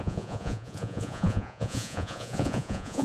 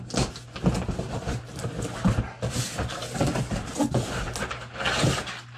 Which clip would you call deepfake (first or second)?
first